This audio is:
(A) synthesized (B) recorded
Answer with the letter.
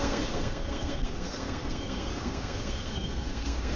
A